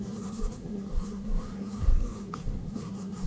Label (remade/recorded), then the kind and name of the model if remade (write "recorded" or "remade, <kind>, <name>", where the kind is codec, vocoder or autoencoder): remade, codec, SNAC